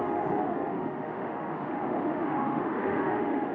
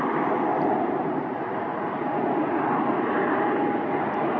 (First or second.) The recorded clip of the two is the second